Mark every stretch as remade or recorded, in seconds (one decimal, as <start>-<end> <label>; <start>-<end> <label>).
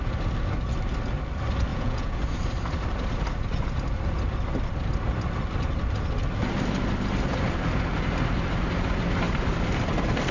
0.0-1.7 recorded; 1.7-2.2 remade; 2.2-10.3 recorded